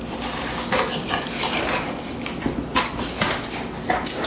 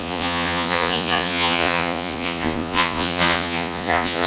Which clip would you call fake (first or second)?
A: second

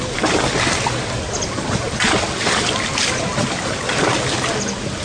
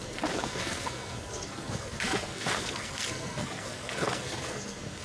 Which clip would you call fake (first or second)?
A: second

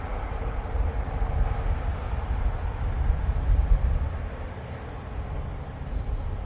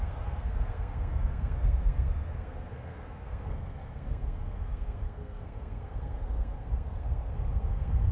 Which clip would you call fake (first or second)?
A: second